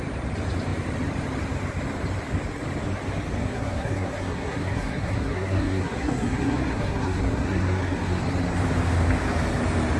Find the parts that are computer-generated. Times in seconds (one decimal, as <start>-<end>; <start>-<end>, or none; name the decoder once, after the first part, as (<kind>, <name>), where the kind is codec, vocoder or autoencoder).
3.4-8.2 (codec, SNAC)

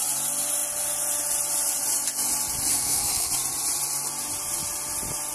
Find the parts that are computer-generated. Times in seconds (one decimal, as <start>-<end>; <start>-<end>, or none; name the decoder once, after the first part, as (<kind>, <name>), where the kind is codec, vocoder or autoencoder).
2.7-3.3 (codec, SNAC)

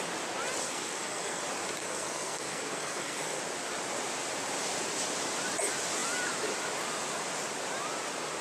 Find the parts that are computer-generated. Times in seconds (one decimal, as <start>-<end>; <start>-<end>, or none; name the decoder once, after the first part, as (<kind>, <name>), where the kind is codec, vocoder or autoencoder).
0.6-1.4 (codec, SNAC); 1.8-3.4